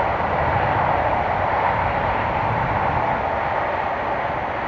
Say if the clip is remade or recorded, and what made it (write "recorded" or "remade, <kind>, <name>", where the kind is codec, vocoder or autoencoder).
recorded